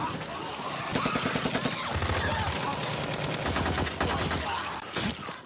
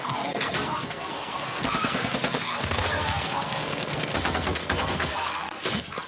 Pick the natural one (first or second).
first